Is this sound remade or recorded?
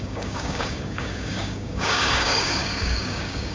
remade